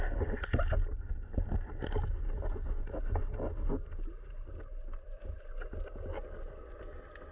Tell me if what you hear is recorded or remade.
recorded